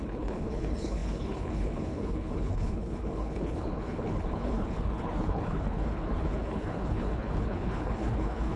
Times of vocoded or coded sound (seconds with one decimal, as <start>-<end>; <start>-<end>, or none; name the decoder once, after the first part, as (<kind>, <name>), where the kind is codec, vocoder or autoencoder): 0.0-8.6 (codec, HILCodec)

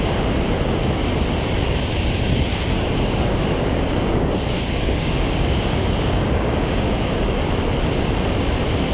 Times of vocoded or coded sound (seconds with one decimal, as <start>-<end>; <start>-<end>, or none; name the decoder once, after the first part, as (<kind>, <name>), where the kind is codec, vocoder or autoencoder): 2.5-7.4 (codec, DAC)